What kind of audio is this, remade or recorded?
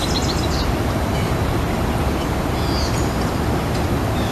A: recorded